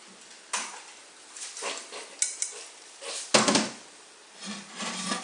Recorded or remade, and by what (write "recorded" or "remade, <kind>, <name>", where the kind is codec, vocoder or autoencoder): recorded